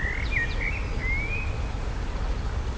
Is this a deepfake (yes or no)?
no